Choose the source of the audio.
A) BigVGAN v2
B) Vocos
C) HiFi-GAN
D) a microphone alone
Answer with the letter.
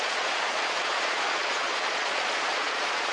B